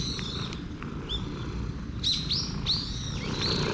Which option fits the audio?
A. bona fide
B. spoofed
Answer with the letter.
A